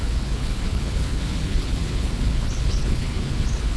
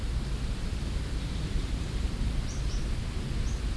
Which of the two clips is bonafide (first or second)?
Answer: second